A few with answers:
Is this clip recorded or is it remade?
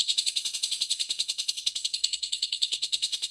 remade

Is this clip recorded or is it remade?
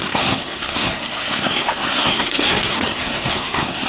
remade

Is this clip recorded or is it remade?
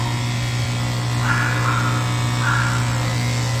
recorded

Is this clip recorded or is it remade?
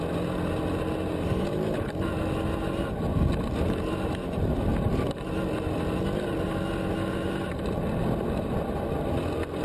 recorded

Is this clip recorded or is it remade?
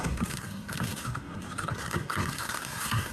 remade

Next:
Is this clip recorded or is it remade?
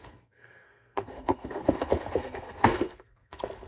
remade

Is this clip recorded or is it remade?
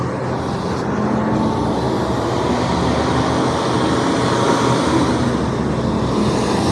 recorded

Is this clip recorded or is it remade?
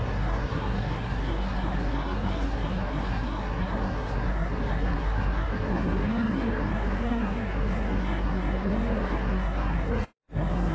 remade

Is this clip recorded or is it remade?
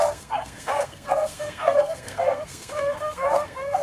remade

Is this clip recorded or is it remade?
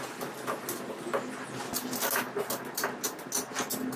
recorded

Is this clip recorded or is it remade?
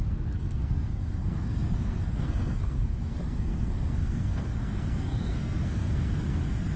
remade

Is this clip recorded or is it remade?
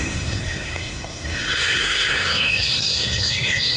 remade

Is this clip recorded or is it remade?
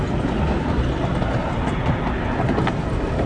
recorded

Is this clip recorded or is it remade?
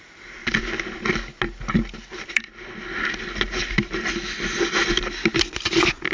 recorded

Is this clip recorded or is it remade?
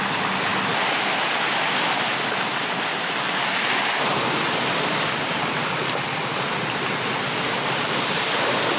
recorded